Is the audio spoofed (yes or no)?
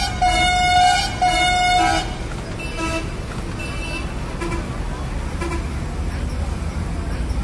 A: no